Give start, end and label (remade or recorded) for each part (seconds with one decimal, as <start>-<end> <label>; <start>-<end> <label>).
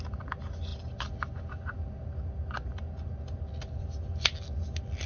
0.0-5.1 recorded